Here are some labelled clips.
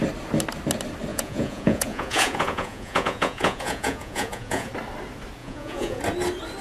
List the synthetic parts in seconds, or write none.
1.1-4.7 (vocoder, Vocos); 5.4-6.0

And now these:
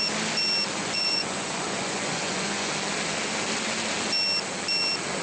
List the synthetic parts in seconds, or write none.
0.8-2.7 (vocoder, Vocos)

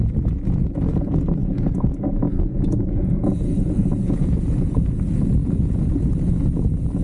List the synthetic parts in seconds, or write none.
1.4-4.8 (vocoder, Vocos); 5.4-6.0

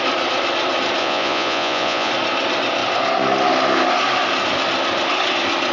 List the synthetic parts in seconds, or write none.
1.0-2.1 (vocoder, Vocos)

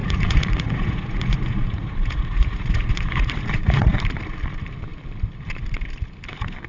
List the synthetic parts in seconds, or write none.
0.0-4.0 (vocoder, Vocos)

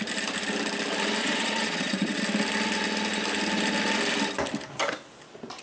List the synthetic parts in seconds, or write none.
1.2-2.2 (vocoder, Vocos)

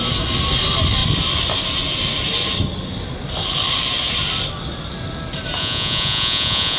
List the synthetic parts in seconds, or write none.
5.6-6.8 (vocoder, Vocos)

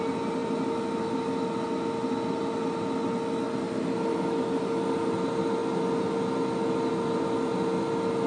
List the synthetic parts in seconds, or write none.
none